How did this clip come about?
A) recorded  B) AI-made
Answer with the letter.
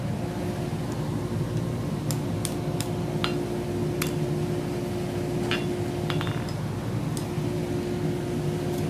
A